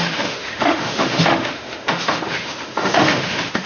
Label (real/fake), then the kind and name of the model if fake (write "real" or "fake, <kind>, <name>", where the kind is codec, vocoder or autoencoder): fake, autoencoder, DAC-VAE